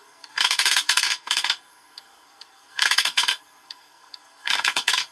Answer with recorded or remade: remade